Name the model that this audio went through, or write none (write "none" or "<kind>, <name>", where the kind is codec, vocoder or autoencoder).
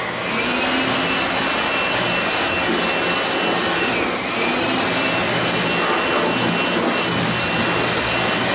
none